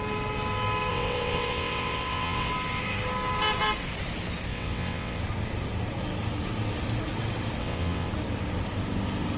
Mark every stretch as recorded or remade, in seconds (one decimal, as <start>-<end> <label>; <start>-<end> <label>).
0.0-0.9 recorded; 0.9-2.5 remade; 2.5-4.5 recorded; 4.5-5.2 remade; 5.2-7.6 recorded; 7.6-8.1 remade; 8.1-9.4 recorded